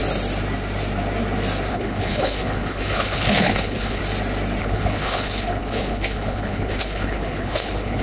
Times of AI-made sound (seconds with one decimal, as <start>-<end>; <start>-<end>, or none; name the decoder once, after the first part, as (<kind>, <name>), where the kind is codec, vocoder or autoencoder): 1.7-4.0 (codec, HILCodec); 4.6-8.0